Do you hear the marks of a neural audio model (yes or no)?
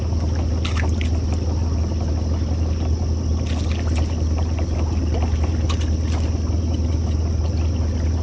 no